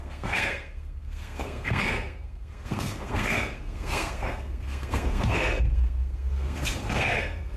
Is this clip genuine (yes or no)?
no